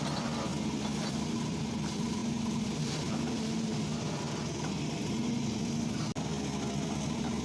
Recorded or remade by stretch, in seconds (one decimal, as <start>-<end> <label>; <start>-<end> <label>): 0.0-7.4 recorded